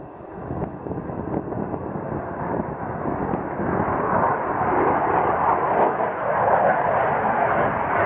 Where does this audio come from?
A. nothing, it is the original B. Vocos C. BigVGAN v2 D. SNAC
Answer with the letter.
C